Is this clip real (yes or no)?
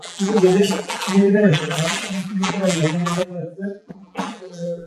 no